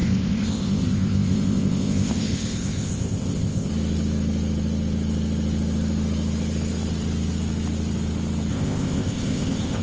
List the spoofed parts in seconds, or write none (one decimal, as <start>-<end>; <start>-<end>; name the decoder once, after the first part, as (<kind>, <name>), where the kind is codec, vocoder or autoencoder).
0.0-3.7 (codec, ZipCodec); 8.5-9.8